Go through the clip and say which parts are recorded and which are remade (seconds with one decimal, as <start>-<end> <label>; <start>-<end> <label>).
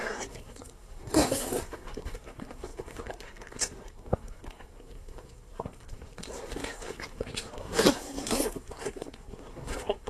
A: 0.0-10.1 remade